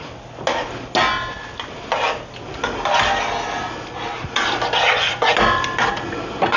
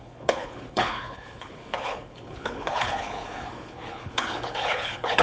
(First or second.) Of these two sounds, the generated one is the second